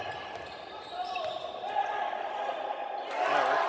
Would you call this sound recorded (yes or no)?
yes